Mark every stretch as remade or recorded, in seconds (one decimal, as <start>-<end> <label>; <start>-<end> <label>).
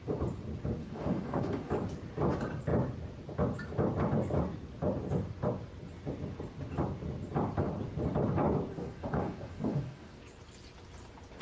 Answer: 0.0-0.8 recorded; 0.8-1.7 remade; 1.7-8.7 recorded; 8.7-10.2 remade; 10.2-11.4 recorded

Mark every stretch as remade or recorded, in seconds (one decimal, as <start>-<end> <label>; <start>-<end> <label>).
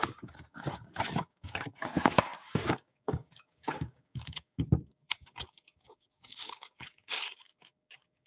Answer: 0.0-8.3 remade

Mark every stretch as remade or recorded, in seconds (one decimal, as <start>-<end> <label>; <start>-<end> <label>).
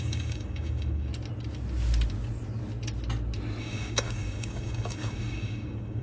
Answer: 0.0-1.1 remade; 1.1-3.6 recorded; 3.6-6.0 remade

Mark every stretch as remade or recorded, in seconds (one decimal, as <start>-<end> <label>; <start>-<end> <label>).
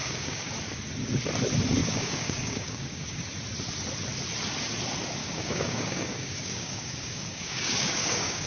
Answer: 0.0-0.5 remade; 0.5-1.8 recorded; 1.8-3.2 remade; 3.2-5.2 recorded; 5.2-8.5 remade